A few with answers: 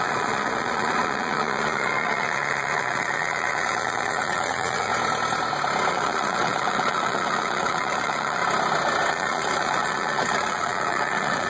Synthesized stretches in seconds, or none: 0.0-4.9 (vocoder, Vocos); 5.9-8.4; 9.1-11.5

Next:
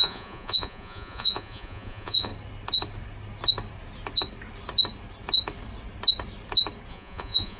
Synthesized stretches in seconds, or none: 0.0-2.3 (vocoder, Vocos); 6.9-7.6

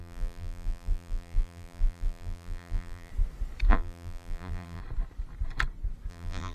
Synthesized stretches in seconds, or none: 0.0-3.1 (vocoder, BigVGAN v2); 3.7-4.8; 6.1-6.5

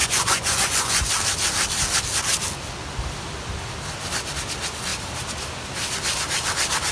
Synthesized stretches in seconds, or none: 0.0-1.1 (vocoder, Vocos)

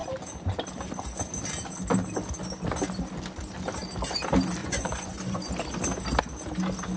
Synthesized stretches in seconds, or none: 4.6-5.5 (vocoder, Vocos)